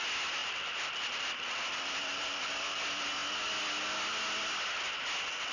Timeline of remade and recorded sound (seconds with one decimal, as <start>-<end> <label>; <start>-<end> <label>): 0.0-0.4 recorded; 0.4-2.5 remade; 2.5-5.5 recorded